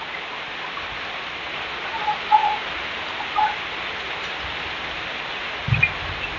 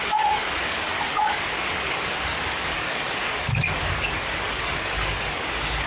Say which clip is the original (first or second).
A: first